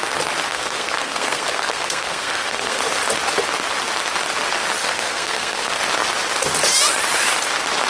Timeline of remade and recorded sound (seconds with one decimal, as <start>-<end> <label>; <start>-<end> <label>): 0.0-0.5 recorded; 0.5-2.8 remade; 2.8-4.8 recorded; 4.8-5.8 remade; 5.8-7.9 recorded